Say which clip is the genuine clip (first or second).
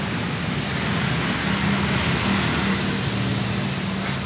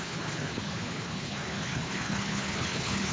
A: first